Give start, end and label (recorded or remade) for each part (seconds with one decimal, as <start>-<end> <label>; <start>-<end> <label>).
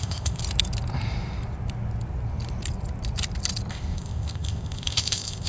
0.0-0.4 remade; 0.4-3.7 recorded; 3.7-5.5 remade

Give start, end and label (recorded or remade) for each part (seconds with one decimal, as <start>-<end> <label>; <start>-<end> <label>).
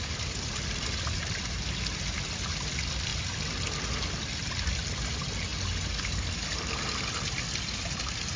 0.0-8.4 recorded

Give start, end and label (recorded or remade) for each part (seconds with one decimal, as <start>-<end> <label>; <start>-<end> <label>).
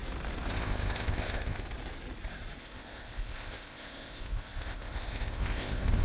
0.0-0.5 recorded; 0.5-1.6 remade; 1.6-2.6 recorded; 2.6-6.0 remade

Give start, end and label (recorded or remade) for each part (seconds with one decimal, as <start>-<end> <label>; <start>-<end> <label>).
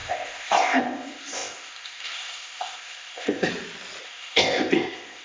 0.0-3.5 remade; 3.5-4.0 recorded; 4.0-5.2 remade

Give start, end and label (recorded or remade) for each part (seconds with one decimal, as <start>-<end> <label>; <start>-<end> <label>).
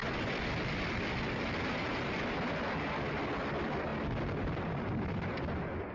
0.0-5.9 recorded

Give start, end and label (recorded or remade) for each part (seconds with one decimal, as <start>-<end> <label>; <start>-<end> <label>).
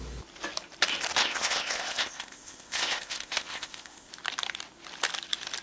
0.0-1.2 recorded; 1.2-4.1 remade; 4.1-5.6 recorded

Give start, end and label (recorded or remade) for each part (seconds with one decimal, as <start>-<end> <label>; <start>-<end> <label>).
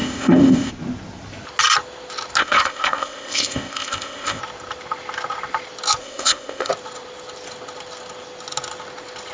0.0-0.7 remade; 0.7-2.4 recorded; 2.4-4.4 remade; 4.4-6.0 recorded; 6.0-6.7 remade; 6.7-9.3 recorded